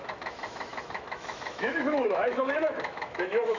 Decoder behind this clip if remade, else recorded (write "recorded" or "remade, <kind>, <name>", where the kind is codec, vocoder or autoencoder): remade, autoencoder, DAC-VAE